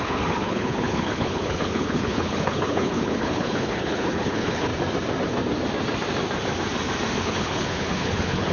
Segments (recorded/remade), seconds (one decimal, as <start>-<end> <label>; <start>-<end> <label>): 0.0-4.7 remade; 4.7-7.2 recorded; 7.2-8.5 remade